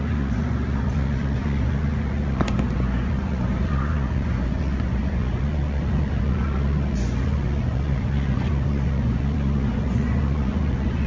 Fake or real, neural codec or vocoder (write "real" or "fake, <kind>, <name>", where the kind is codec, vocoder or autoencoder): fake, vocoder, Vocos